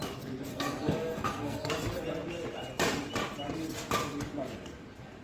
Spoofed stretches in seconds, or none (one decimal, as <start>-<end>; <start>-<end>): 0.5-1.7

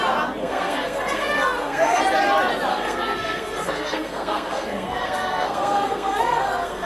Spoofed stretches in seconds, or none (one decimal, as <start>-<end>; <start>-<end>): 0.4-2.0; 2.7-6.9

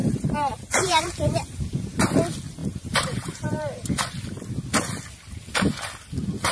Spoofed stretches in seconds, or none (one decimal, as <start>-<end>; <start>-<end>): 0.0-2.0; 2.6-3.9

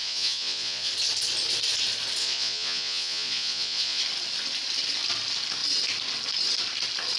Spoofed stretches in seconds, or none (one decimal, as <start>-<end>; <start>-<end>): 0.0-0.9; 2.2-4.0

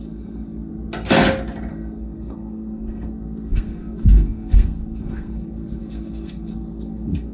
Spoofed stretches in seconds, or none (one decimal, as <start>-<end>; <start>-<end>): 0.0-0.7; 1.7-7.3

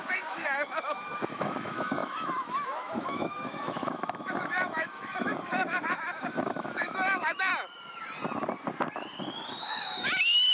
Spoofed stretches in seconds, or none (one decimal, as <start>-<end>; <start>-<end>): 0.0-7.5; 9.6-10.5

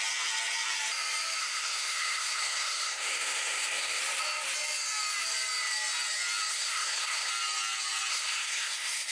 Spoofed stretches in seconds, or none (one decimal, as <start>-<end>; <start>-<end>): 1.4-4.0; 6.5-7.3; 8.1-9.1